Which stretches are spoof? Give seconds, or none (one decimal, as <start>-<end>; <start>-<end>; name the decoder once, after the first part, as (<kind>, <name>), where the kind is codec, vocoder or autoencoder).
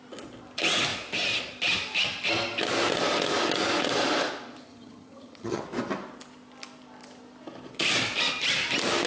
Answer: 4.7-5.6 (vocoder, HiFi-GAN)